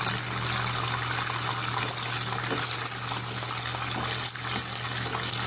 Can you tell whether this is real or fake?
real